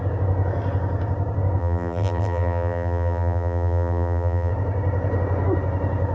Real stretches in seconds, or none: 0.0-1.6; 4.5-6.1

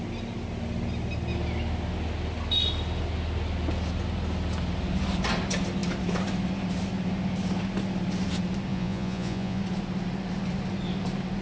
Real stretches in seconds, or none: 0.0-8.7; 9.6-11.4

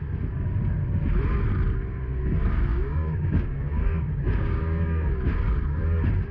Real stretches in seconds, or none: 0.0-2.7; 5.3-6.3

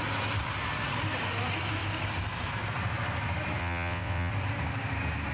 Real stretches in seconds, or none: 0.0-3.6; 4.3-5.3